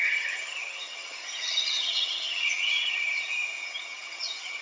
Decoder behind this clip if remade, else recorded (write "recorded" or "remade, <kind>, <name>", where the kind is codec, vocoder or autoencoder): remade, vocoder, HiFi-GAN